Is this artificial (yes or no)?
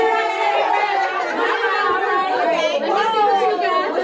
no